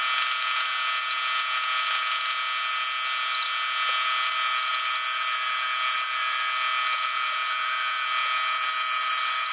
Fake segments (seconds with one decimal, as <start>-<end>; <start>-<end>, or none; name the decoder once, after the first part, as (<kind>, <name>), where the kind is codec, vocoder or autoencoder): none